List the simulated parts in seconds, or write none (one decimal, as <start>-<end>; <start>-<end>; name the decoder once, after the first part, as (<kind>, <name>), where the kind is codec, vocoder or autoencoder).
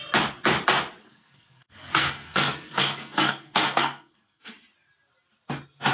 1.0-4.5 (codec, SNAC)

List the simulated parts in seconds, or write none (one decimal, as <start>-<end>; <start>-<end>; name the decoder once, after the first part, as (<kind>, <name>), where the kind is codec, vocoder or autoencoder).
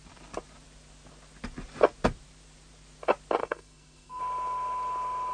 3.4-4.2 (codec, SNAC)